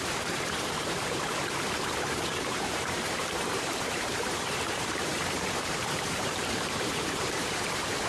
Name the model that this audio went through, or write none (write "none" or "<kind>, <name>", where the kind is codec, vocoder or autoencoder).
vocoder, BigVGAN v2